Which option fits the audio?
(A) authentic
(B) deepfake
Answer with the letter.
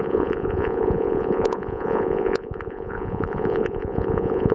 B